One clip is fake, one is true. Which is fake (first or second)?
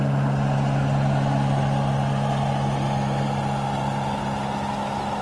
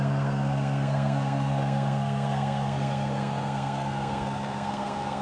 second